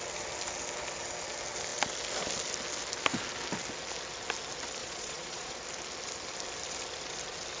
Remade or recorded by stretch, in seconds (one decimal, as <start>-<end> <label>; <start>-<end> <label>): 0.0-4.8 recorded; 4.8-5.5 remade; 5.5-7.6 recorded